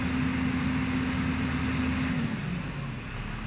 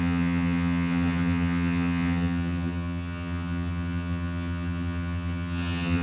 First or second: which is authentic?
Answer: first